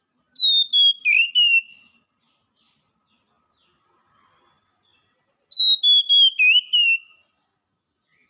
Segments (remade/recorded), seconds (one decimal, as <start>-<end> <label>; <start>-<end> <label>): 0.0-8.3 recorded